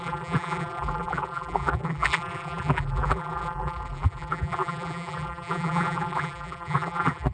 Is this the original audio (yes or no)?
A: no